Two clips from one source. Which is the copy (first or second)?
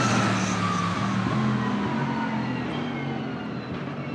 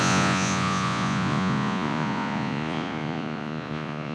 second